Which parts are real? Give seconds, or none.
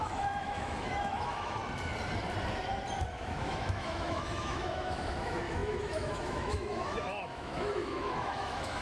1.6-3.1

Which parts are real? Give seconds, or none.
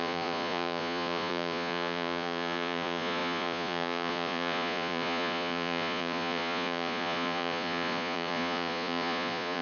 none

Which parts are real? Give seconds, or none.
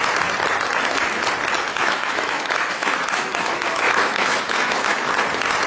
0.0-1.7; 5.1-5.7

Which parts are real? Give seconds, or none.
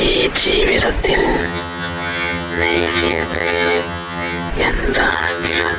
0.0-1.4; 4.5-5.1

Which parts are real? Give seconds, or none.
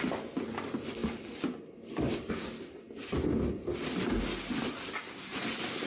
0.0-5.9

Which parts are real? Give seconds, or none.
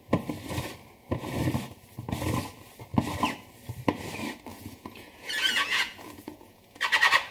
0.0-4.5; 6.8-7.3